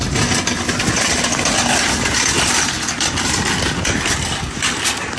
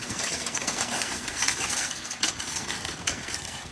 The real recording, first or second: first